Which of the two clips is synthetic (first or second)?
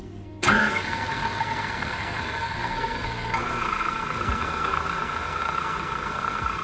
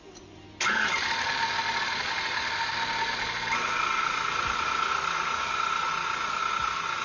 first